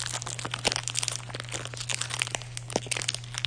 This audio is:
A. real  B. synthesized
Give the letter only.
A